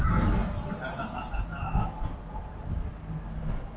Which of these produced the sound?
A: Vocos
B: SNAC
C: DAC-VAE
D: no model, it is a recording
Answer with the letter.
D